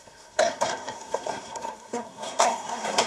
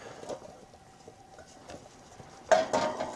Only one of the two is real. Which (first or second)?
second